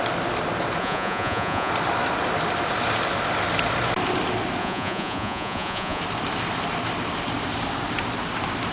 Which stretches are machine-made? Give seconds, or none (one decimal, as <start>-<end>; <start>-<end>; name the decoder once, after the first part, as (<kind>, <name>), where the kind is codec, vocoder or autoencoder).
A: 0.8-1.7 (vocoder, Vocos); 4.6-6.0